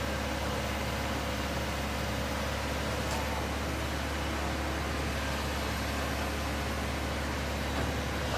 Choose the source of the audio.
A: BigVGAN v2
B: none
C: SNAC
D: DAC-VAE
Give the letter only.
B